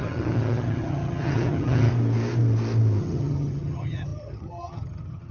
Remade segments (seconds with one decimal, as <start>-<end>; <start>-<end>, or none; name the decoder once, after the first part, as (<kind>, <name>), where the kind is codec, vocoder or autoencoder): 0.0-1.9 (vocoder, HiFi-GAN); 3.0-5.3